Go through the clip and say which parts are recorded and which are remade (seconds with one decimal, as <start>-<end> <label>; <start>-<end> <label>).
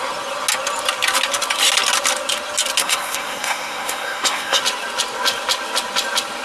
0.0-2.8 recorded; 2.8-4.6 remade; 4.6-6.4 recorded